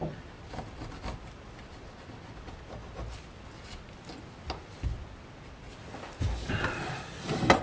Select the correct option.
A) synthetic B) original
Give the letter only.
B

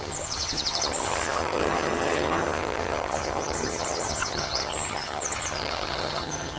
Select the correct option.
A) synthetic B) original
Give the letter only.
A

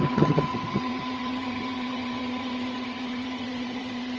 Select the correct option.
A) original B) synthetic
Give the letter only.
B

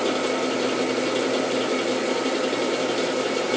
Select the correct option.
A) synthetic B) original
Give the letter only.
B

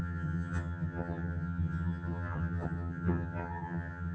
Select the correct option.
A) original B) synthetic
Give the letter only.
B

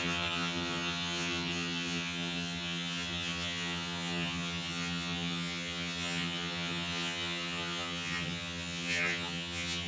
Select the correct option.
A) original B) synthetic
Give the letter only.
B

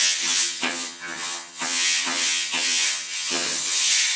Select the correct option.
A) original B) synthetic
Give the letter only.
B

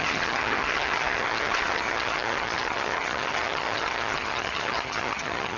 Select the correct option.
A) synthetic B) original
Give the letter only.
A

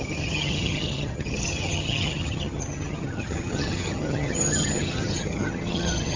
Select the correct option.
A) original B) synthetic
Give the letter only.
B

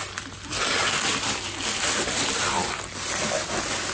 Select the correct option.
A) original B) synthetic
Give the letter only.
A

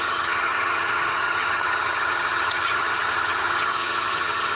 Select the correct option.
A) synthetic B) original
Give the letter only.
A